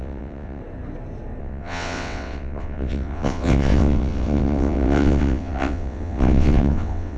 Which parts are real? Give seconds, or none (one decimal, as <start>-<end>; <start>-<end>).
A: 0.6-1.4